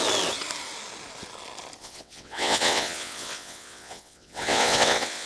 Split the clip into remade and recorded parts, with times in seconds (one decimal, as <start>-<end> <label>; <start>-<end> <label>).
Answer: 0.0-1.8 recorded; 1.8-5.3 remade